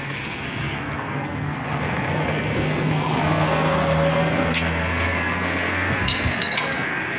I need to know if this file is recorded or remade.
remade